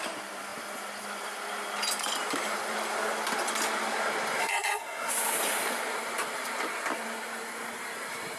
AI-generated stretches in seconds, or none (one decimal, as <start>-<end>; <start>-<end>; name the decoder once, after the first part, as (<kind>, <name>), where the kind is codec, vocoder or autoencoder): 4.4-5.1 (codec, SNAC)